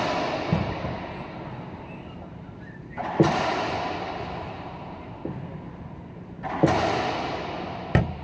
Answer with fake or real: real